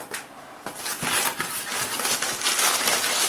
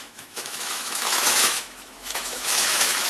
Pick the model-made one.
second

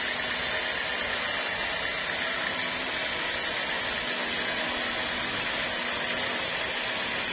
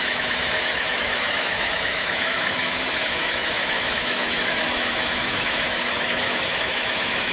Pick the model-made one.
second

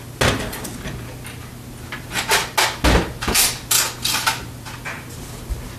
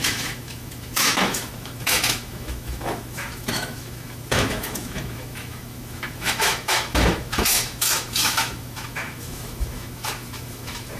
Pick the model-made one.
second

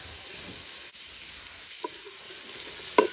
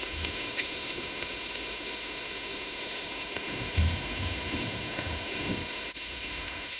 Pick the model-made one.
second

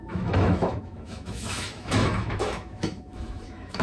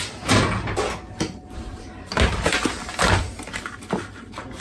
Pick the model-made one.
first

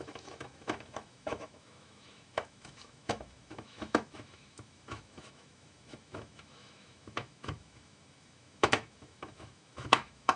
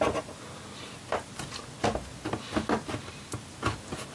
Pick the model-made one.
first